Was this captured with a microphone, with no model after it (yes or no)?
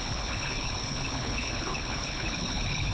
no